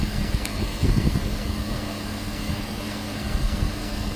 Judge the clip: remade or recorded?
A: remade